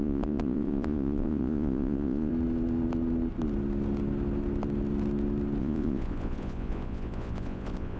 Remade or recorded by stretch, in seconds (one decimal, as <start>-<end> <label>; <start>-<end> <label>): 0.0-2.3 remade; 2.3-5.6 recorded; 5.6-8.0 remade